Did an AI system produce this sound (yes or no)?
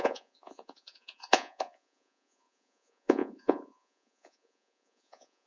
yes